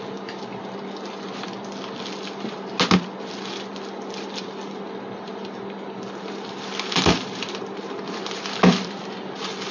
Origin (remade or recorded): recorded